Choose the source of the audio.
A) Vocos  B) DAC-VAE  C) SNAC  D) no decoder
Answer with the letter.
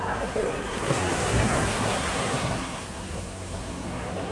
C